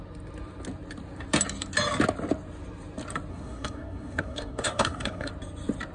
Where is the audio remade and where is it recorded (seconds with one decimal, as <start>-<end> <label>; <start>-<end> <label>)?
0.0-3.3 recorded; 3.3-5.3 remade; 5.3-5.9 recorded